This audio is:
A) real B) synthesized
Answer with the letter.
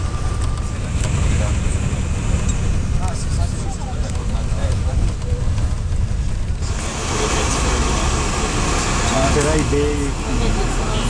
A